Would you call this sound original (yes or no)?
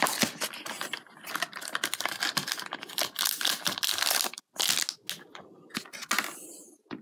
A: yes